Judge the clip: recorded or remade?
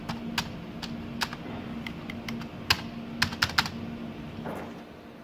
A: recorded